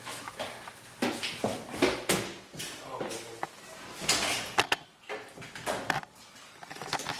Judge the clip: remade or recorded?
recorded